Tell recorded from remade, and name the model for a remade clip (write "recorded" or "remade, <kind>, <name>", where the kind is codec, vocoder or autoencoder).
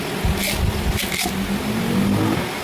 recorded